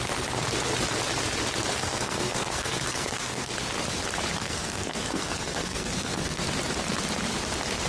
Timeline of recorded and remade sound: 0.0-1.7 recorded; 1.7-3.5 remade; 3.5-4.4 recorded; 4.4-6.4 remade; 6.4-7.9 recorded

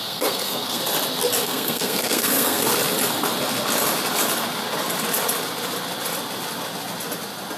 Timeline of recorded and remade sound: 0.0-0.8 remade; 0.8-1.4 recorded; 1.4-2.7 remade; 2.7-7.6 recorded

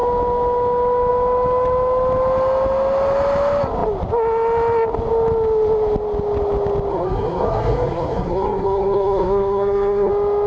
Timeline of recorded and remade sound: 0.0-6.9 recorded; 6.9-10.1 remade; 10.1-10.5 recorded

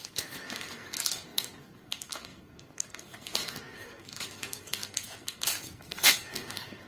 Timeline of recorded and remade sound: 0.0-6.9 remade

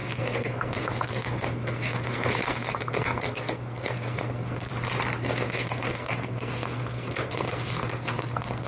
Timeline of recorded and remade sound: 0.0-4.7 remade; 4.7-5.2 recorded; 5.2-8.7 remade

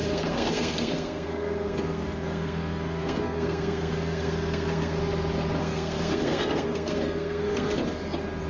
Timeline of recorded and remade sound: 0.0-5.0 remade; 5.0-5.6 recorded; 5.6-7.8 remade; 7.8-8.5 recorded

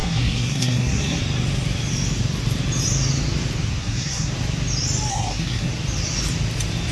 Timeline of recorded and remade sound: 0.0-1.2 remade; 1.2-3.8 recorded; 3.8-4.3 remade; 4.3-5.1 recorded; 5.1-5.7 remade; 5.7-6.9 recorded

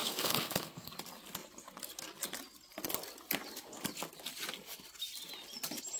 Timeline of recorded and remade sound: 0.0-0.9 remade; 0.9-6.0 recorded